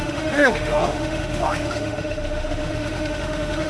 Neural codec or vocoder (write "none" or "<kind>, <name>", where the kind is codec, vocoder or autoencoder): autoencoder, DAC-VAE